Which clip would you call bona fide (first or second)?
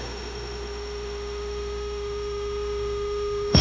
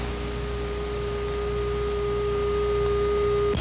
second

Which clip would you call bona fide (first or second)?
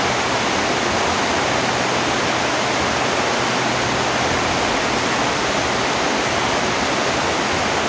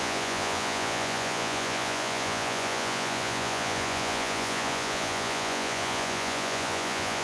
first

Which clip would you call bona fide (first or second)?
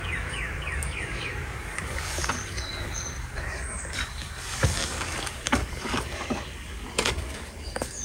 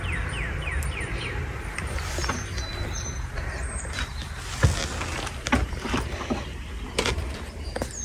second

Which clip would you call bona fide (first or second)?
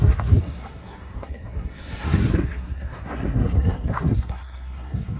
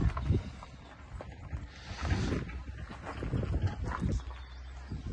second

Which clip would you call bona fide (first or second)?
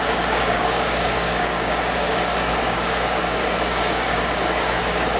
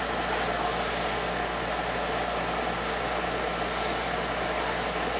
second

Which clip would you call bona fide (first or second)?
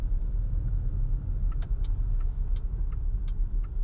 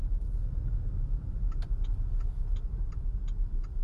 first